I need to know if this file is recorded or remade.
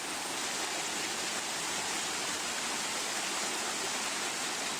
remade